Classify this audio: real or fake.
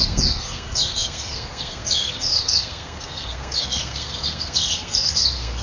fake